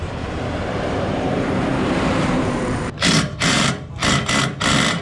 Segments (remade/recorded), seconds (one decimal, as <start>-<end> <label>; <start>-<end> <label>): 0.0-4.0 remade; 4.0-5.0 recorded